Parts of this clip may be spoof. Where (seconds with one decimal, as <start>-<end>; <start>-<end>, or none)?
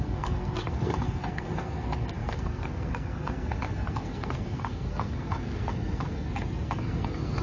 0.0-7.4